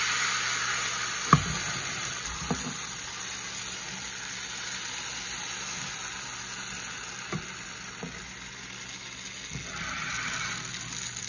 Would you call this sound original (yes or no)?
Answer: yes